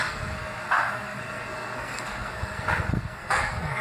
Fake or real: fake